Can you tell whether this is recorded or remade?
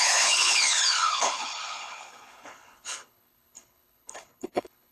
remade